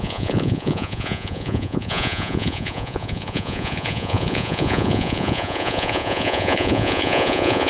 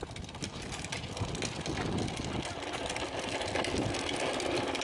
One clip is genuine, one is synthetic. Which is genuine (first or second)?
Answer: second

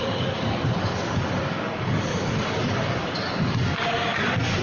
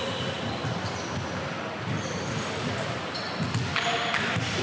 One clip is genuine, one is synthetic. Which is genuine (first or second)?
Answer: second